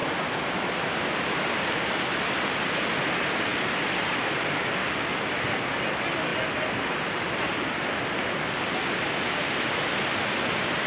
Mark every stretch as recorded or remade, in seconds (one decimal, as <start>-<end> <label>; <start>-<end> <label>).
0.0-10.9 recorded